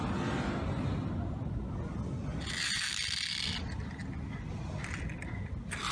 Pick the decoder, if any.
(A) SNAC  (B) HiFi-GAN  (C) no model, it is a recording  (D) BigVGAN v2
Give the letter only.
C